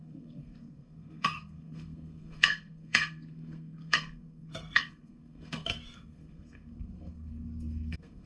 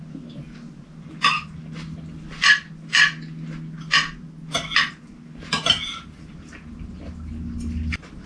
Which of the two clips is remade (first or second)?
first